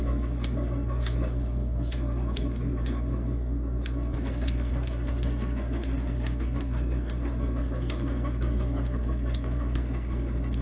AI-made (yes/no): yes